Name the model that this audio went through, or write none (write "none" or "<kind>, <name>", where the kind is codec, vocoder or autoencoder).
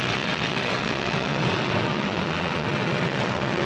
vocoder, WaveNeXt